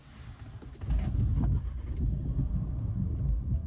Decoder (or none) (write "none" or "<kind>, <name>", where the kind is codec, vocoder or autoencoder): none